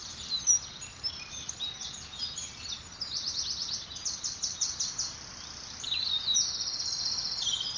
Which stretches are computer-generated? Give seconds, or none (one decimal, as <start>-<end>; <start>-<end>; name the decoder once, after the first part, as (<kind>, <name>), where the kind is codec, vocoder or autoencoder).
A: none